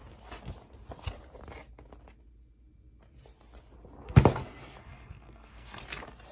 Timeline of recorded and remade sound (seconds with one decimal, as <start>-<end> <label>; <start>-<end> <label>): 0.0-4.8 recorded; 4.8-5.8 remade; 5.8-6.3 recorded